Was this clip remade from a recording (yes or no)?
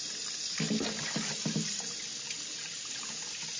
no